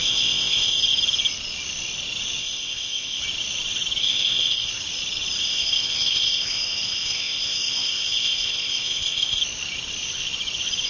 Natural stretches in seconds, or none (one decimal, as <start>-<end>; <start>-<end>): 0.8-2.4; 3.2-4.0; 4.7-5.4; 9.4-10.9